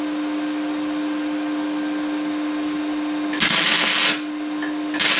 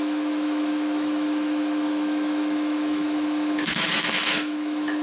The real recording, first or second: first